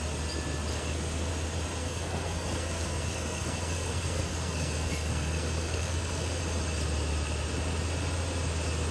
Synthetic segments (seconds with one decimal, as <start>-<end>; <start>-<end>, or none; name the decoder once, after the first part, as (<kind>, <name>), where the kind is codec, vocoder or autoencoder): 0.7-1.3 (codec, SNAC); 1.8-6.4